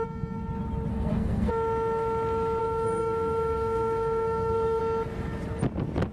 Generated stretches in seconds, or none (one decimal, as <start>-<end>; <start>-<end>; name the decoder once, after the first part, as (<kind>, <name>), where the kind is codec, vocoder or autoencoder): 0.9-1.5 (codec, SNAC); 2.6-4.8